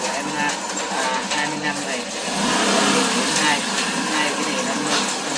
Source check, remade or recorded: recorded